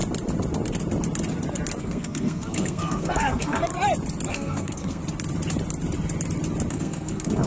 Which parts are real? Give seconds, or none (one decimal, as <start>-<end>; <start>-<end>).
0.0-1.8; 3.7-4.3; 5.0-6.7